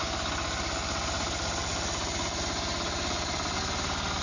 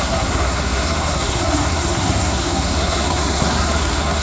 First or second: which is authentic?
first